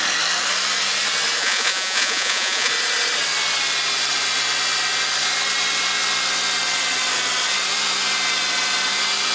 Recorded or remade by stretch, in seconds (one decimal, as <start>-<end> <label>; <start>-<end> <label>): 0.0-1.4 recorded; 1.4-2.7 remade; 2.7-9.3 recorded